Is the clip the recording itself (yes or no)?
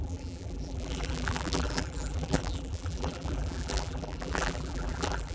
no